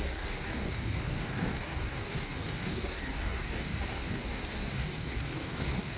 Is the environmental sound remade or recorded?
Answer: remade